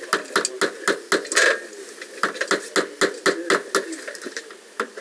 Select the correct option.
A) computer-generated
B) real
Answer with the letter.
B